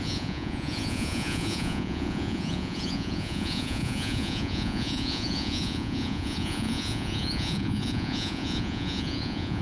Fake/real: fake